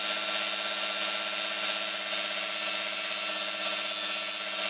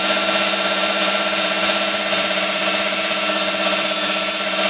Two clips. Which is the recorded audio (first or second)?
first